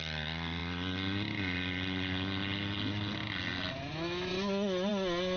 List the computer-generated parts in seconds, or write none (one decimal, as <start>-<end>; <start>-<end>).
none